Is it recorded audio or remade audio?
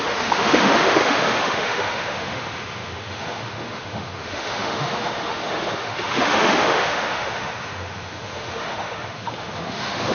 remade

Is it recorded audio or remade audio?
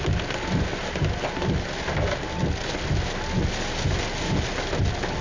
recorded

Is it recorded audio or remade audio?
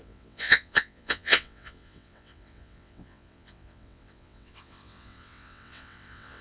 remade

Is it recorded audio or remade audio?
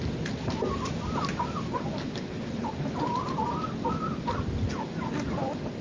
remade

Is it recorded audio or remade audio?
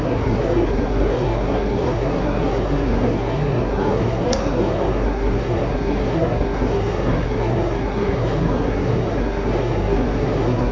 remade